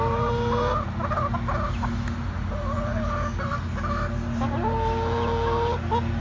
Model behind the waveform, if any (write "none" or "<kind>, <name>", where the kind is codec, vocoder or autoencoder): none